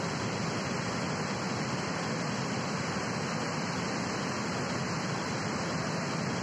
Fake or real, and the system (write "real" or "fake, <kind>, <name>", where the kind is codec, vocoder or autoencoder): fake, vocoder, BigVGAN v2